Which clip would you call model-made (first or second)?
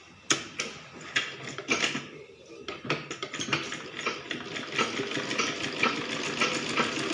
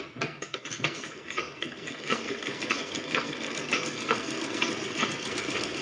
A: second